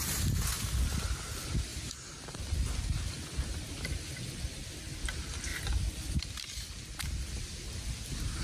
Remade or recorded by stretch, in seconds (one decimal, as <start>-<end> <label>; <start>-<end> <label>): 0.0-5.5 recorded; 5.5-6.8 remade; 6.8-8.4 recorded